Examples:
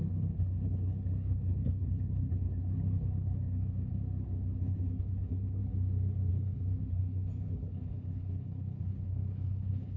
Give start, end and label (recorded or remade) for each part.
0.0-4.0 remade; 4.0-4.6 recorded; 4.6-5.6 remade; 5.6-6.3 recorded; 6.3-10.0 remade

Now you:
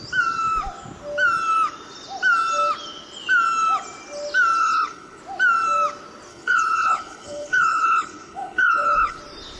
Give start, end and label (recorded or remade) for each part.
0.0-4.6 recorded; 4.6-5.2 remade; 5.2-6.3 recorded; 6.3-9.2 remade; 9.2-9.6 recorded

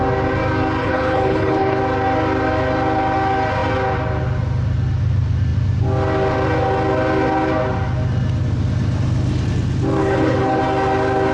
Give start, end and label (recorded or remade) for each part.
0.0-0.8 recorded; 0.8-1.8 remade; 1.8-10.0 recorded; 10.0-10.6 remade; 10.6-11.3 recorded